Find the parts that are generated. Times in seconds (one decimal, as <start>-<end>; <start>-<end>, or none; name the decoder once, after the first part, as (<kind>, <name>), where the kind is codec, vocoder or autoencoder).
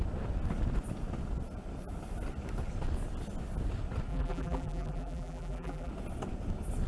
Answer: 4.1-5.9 (vocoder, BigVGAN v2)